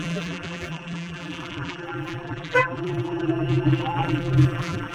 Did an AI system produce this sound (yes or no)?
yes